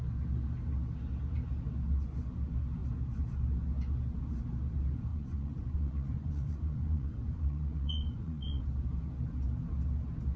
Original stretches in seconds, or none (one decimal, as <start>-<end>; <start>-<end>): 0.0-5.1; 8.6-10.4